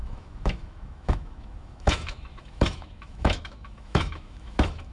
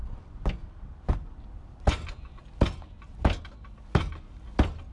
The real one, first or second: second